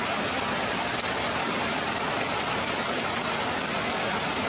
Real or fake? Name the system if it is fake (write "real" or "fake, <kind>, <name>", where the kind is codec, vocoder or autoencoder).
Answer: real